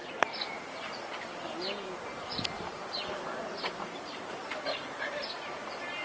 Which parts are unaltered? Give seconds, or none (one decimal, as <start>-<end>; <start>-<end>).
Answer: 0.0-6.0